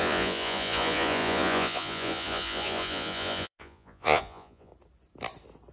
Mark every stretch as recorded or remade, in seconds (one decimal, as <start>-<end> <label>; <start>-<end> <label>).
0.0-4.7 remade; 4.7-5.7 recorded